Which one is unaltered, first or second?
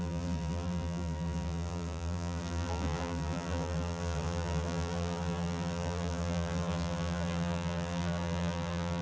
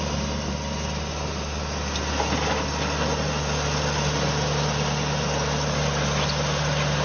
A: second